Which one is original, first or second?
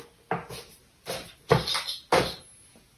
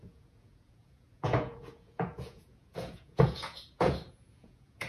first